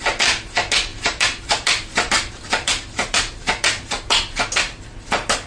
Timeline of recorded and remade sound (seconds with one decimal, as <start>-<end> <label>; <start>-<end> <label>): 0.0-0.9 recorded; 0.9-4.2 remade; 4.2-5.5 recorded